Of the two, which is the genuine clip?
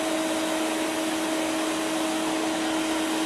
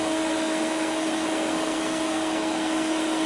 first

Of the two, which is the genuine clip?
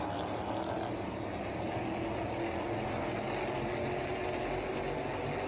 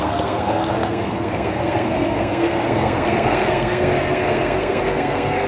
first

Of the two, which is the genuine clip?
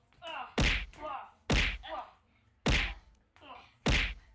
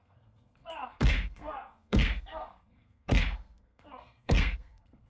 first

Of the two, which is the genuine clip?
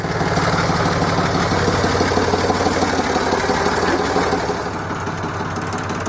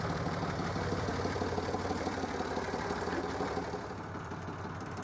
first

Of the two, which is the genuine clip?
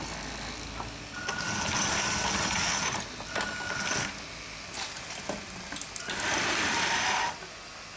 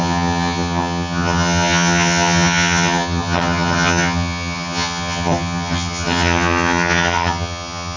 first